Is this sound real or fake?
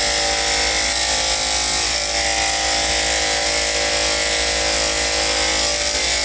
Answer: real